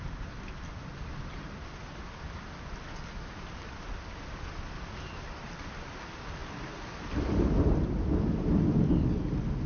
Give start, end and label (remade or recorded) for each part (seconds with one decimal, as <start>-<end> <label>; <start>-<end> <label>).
0.0-9.7 recorded

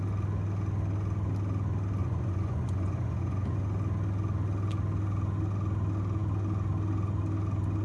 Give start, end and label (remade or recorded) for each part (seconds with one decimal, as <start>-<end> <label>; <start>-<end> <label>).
0.0-2.0 recorded; 2.0-3.6 remade; 3.6-7.8 recorded